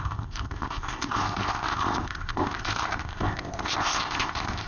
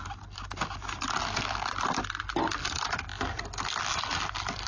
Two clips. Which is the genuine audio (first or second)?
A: second